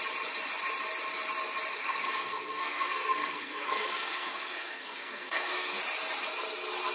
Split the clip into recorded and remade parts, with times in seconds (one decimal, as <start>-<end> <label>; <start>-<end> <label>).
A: 0.0-1.7 recorded; 1.7-5.8 remade; 5.8-6.9 recorded